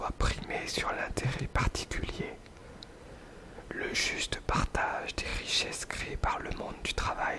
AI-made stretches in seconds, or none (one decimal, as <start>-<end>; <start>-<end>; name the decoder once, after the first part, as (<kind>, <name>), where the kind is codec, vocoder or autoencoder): 0.0-5.3 (vocoder, BigVGAN v2); 6.0-7.4